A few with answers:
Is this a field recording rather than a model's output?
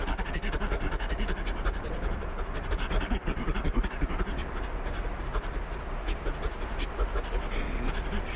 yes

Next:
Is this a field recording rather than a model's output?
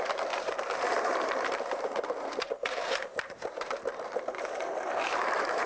no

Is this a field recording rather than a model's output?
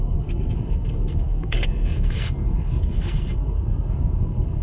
no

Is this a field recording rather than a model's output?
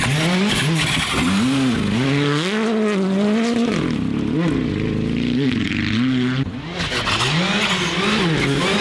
yes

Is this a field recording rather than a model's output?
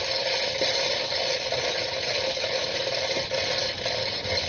yes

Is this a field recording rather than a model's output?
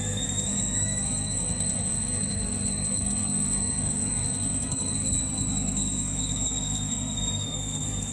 no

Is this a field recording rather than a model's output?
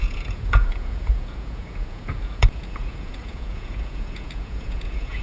no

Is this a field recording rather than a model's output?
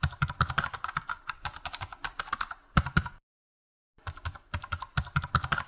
no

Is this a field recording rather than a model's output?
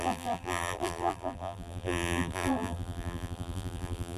no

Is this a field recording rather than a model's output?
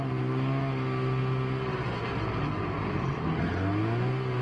yes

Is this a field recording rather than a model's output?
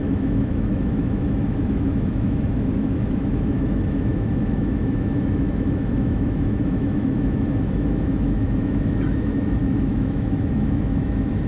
no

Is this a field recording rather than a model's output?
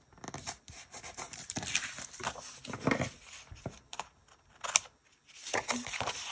yes